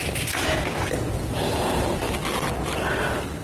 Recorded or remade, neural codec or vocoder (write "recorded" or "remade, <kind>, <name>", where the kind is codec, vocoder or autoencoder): recorded